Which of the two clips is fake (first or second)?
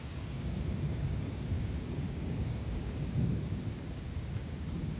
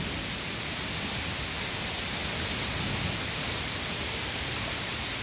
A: first